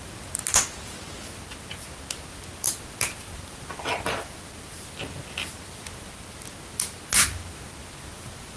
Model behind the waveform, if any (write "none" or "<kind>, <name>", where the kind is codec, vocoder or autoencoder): none